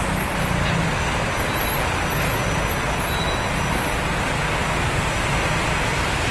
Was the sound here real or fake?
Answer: real